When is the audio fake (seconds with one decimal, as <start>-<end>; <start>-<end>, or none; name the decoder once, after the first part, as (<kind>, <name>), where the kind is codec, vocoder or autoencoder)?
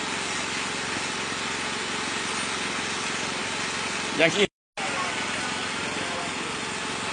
none